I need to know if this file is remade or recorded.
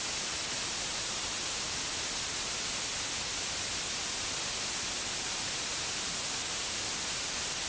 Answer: recorded